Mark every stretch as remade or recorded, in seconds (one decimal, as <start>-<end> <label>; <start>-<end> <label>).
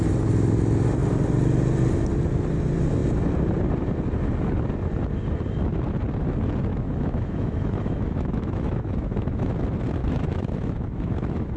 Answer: 0.0-6.7 recorded; 6.7-9.5 remade; 9.5-10.0 recorded; 10.0-11.6 remade